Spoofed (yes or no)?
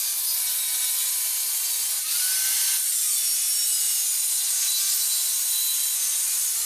no